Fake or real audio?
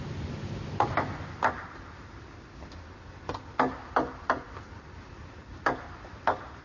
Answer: real